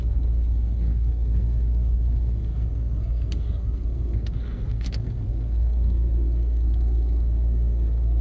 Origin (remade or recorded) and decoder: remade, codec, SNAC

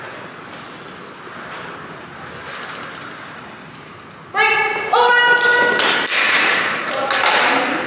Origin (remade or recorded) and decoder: recorded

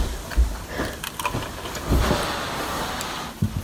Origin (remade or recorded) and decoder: recorded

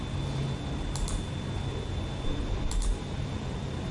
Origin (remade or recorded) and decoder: recorded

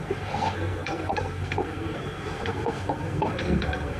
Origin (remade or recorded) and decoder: remade, codec, SNAC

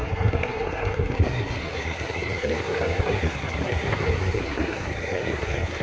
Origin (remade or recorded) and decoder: remade, codec, SNAC